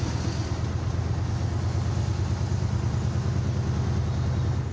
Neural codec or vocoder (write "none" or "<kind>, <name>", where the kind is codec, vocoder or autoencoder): none